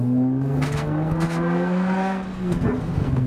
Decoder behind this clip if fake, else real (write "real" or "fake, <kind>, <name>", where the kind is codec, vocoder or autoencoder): fake, codec, SNAC